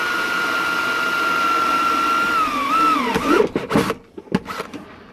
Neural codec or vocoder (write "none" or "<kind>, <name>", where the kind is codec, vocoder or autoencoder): none